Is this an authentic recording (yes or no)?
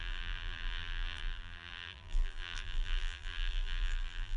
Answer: no